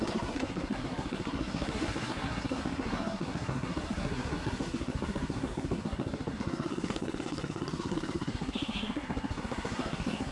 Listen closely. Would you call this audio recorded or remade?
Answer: remade